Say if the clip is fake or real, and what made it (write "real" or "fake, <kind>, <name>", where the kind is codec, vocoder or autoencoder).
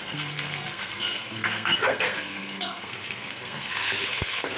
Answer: fake, codec, SNAC